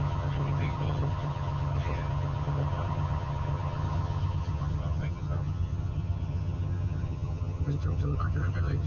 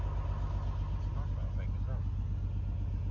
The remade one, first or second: first